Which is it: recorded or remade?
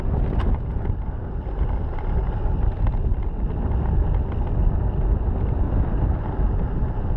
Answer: recorded